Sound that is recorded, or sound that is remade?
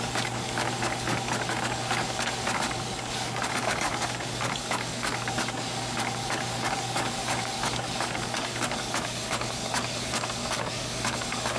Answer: remade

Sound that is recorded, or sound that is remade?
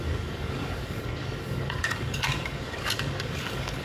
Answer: remade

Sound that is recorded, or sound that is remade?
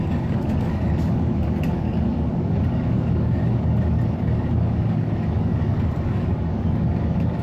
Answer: remade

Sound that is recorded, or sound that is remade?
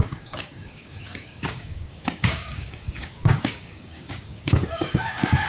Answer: remade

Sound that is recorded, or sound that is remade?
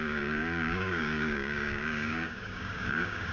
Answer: remade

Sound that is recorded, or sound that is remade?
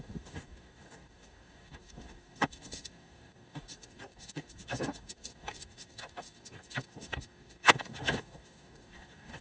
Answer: remade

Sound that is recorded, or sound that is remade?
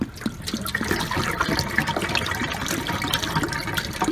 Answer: recorded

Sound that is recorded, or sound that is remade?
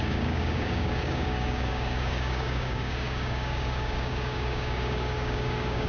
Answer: remade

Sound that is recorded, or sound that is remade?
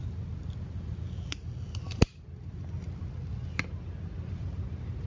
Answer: recorded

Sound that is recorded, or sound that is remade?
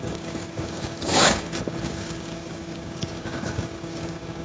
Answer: remade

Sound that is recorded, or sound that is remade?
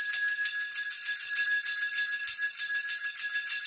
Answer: recorded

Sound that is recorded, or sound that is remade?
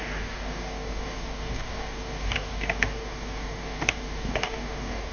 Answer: remade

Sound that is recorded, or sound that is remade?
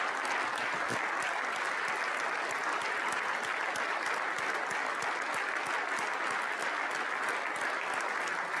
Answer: recorded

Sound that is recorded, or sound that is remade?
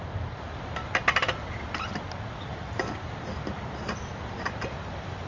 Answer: recorded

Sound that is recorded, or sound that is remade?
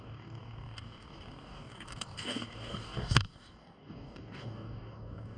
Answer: remade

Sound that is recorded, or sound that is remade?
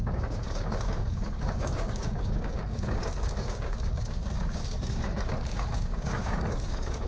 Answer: remade